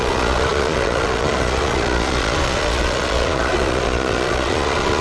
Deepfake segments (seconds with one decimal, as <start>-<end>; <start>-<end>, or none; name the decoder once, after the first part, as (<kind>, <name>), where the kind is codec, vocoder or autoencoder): 0.0-5.0 (vocoder, Vocos)